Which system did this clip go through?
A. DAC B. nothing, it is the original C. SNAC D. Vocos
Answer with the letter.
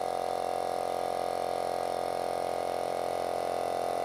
B